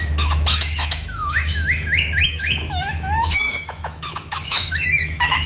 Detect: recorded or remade remade